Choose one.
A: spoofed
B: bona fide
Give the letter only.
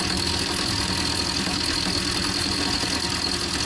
B